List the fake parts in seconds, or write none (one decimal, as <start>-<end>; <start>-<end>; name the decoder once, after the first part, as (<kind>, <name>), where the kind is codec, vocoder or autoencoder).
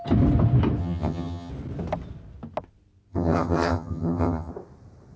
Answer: 0.8-1.5 (vocoder, HiFi-GAN); 3.1-4.5